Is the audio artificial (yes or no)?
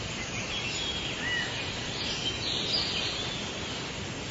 no